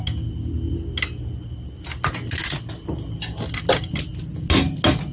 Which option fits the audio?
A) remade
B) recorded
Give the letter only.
B